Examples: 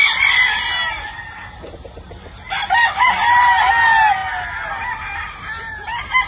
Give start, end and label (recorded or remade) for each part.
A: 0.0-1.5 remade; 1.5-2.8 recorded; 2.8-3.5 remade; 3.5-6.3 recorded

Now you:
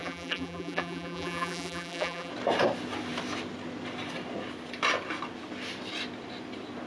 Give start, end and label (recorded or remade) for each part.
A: 0.0-2.3 remade; 2.3-6.9 recorded

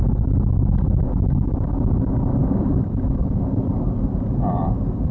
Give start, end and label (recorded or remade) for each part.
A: 0.0-2.4 recorded; 2.4-4.6 remade; 4.6-5.1 recorded

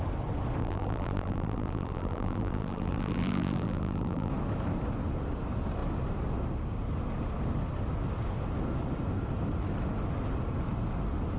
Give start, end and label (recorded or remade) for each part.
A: 0.0-0.6 recorded; 0.6-4.3 remade; 4.3-11.4 recorded

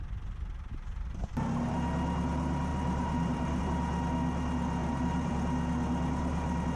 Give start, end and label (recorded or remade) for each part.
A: 0.0-2.7 recorded; 2.7-3.6 remade; 3.6-4.8 recorded; 4.8-5.3 remade; 5.3-6.8 recorded